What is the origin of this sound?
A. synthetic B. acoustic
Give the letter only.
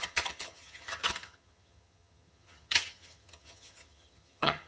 A